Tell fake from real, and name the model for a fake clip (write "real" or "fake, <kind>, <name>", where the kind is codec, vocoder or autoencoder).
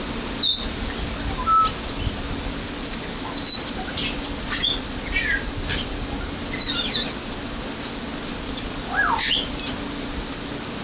real